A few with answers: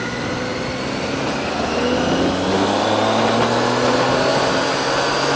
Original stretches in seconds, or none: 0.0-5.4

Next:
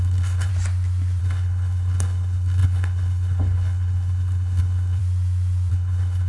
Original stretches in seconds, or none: 0.5-1.2; 5.0-5.7

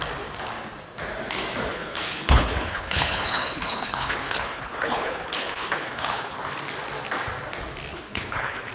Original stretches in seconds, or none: 0.0-1.7; 6.4-7.9

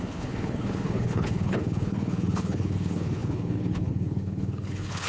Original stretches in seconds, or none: none

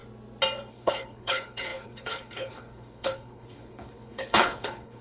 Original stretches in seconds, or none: 0.0-0.7

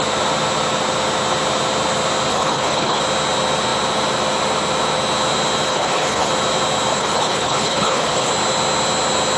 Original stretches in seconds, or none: 0.0-2.3; 3.0-5.7; 6.3-6.9; 8.3-9.4

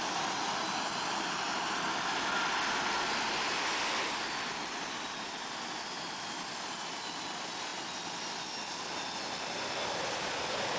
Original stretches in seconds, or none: 0.0-10.8

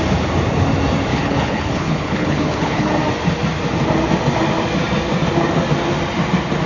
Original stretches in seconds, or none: 0.0-1.1; 2.9-6.7